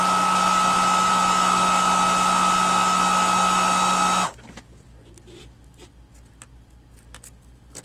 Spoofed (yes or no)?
no